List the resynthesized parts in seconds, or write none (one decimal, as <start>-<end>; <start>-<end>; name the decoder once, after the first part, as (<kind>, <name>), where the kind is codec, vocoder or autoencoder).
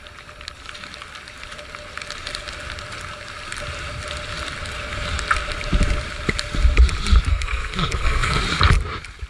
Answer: 7.3-8.4 (codec, SNAC)